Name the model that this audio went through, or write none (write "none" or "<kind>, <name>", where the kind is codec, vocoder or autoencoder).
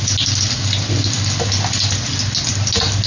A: none